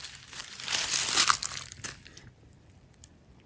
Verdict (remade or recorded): remade